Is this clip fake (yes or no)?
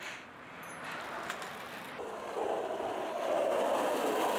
no